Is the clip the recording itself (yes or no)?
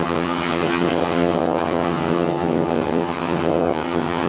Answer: no